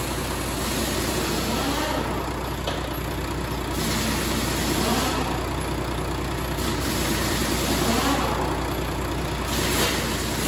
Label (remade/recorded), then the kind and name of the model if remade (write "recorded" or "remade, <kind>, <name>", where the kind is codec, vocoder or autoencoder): recorded